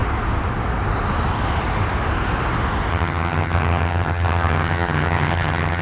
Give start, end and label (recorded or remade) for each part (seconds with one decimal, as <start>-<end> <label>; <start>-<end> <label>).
0.0-2.9 recorded; 2.9-5.8 remade